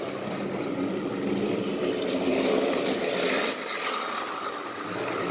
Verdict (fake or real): real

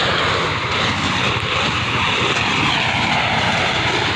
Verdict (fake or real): real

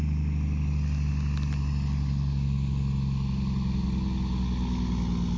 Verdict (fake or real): real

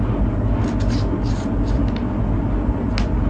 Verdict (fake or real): real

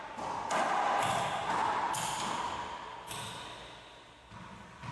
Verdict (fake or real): real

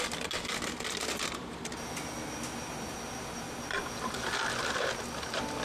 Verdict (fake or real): real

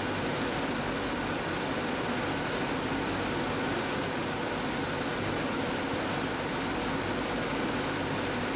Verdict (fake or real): real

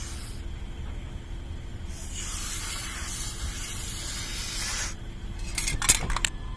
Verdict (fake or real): real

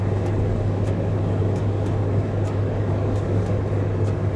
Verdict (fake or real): fake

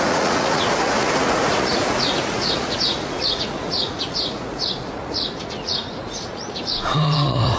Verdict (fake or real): fake